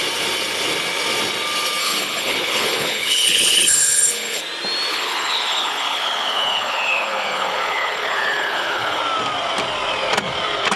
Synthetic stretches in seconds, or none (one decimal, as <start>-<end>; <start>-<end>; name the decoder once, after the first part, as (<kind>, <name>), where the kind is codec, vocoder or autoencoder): 1.8-4.4 (codec, HILCodec); 4.9-9.0